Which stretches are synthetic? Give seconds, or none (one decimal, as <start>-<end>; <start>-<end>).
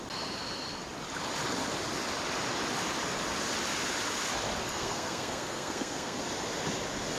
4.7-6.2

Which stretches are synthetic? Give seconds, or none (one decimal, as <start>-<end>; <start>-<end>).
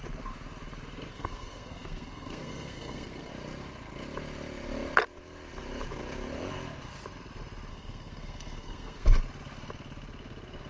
1.1-3.3; 7.7-9.2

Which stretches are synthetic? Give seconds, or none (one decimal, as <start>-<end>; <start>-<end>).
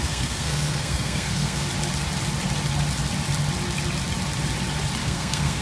0.0-1.6; 5.0-5.6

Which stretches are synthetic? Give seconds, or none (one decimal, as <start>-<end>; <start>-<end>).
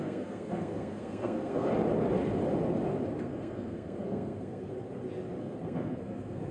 0.0-1.7; 3.2-4.7; 5.4-6.5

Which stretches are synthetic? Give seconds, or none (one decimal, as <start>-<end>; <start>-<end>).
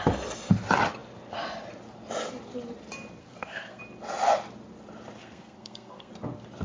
3.2-3.8; 5.2-6.1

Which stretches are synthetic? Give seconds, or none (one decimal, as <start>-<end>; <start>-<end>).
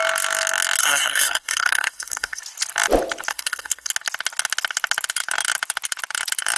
0.8-2.4; 3.3-3.9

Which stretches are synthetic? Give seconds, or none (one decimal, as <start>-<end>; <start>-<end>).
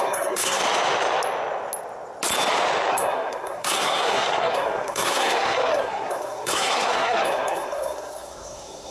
0.0-0.6; 2.9-8.9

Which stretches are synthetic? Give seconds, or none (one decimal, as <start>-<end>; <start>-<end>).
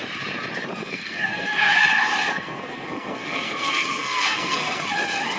0.8-1.8; 2.3-4.8